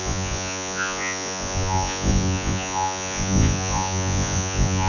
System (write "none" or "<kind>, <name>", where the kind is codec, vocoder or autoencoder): vocoder, Vocos